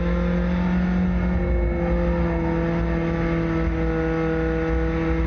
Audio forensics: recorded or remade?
recorded